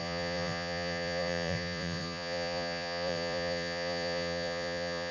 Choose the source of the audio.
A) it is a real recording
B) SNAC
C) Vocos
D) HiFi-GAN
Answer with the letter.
C